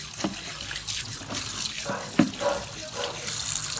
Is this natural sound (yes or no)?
yes